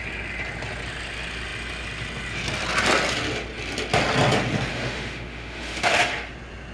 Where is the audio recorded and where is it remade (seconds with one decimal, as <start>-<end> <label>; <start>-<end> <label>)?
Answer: 0.0-4.7 recorded; 4.7-6.0 remade; 6.0-6.7 recorded

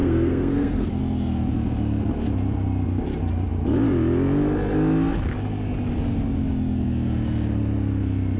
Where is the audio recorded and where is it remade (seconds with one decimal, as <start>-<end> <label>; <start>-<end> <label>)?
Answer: 0.0-1.0 remade; 1.0-8.4 recorded

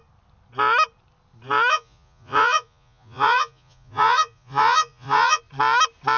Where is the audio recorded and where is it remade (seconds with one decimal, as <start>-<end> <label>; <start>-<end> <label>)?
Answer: 0.0-1.7 recorded; 1.7-5.4 remade; 5.4-6.2 recorded

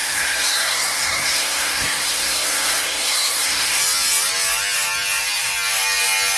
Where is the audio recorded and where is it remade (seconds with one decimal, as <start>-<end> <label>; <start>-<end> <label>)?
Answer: 0.0-3.8 remade; 3.8-6.4 recorded